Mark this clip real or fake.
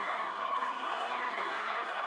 fake